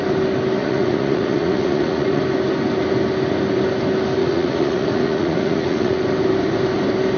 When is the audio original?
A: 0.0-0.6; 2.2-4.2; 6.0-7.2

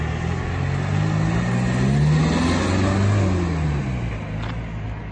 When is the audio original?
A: 0.0-5.1